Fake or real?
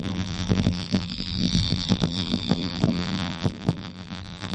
fake